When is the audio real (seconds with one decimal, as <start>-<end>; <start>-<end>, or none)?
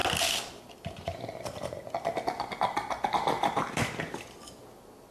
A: 0.0-5.1